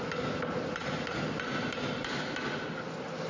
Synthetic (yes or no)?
no